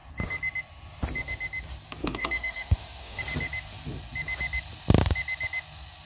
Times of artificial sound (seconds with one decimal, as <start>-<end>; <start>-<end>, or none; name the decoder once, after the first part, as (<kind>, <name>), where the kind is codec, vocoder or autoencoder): 2.0-3.2 (autoencoder, DAC-VAE)